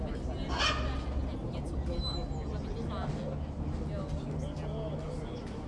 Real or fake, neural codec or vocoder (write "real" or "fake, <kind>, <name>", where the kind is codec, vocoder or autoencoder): real